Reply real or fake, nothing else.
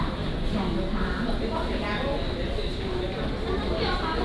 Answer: real